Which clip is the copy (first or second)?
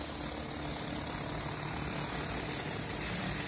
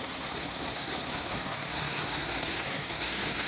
second